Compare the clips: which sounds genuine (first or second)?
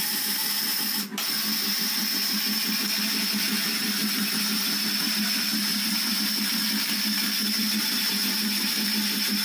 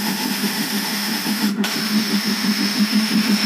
first